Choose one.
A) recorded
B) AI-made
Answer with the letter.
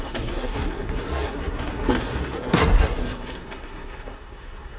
B